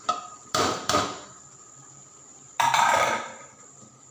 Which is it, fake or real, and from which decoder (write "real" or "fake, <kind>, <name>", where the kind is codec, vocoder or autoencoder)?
fake, vocoder, BigVGAN v2